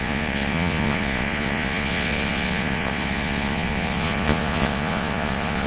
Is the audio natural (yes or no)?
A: no